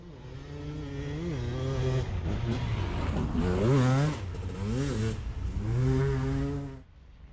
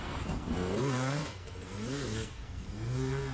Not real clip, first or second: second